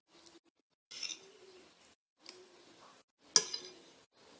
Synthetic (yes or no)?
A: no